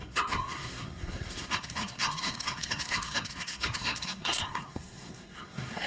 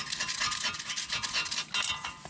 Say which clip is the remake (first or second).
first